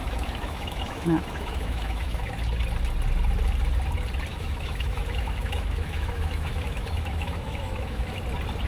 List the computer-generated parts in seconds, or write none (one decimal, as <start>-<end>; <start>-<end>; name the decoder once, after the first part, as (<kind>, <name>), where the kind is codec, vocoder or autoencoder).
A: 0.0-2.3 (autoencoder, DAC-VAE); 4.3-8.2